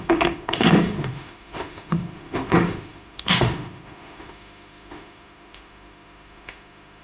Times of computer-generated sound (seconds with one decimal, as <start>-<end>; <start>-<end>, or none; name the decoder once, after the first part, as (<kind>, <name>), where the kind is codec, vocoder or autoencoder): 0.0-7.0 (autoencoder, DAC-VAE)